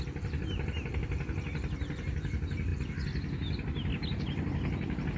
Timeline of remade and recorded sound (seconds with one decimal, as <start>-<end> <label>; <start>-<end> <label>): 0.0-5.2 recorded